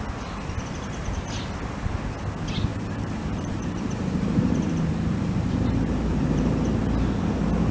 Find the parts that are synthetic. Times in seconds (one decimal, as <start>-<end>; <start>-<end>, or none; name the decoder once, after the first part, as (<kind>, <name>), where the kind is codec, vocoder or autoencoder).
2.7-6.8 (vocoder, BigVGAN v2)